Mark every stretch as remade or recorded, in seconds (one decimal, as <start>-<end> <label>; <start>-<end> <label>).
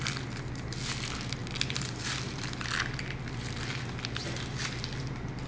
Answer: 0.0-5.5 recorded